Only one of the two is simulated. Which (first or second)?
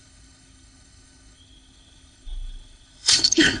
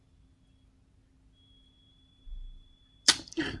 first